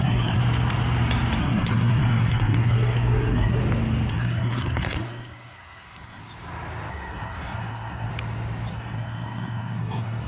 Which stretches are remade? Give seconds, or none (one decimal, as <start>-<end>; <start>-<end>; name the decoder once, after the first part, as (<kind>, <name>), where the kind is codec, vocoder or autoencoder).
0.0-0.4 (codec, SNAC); 1.4-3.6; 4.1-6.2; 6.9-8.1; 8.7-10.3